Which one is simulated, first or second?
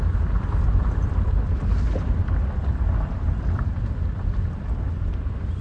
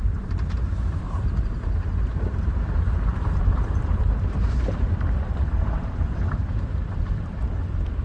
second